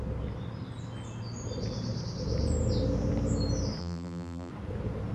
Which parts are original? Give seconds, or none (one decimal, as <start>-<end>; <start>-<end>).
0.0-3.8; 4.5-5.1